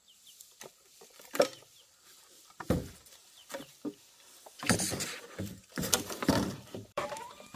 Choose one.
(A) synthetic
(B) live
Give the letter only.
A